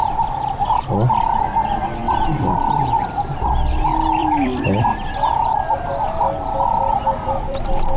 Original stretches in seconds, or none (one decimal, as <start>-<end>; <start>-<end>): 0.0-2.0; 2.8-4.2; 5.9-6.9